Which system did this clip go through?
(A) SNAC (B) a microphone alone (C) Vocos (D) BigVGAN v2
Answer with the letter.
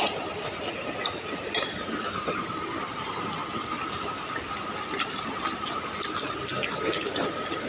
B